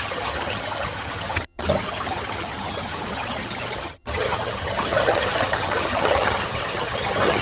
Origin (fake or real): fake